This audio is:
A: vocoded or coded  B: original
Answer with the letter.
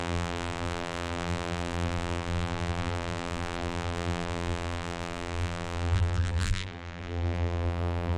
A